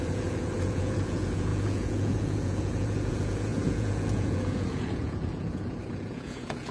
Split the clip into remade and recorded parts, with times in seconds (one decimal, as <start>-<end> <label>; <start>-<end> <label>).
0.0-6.7 remade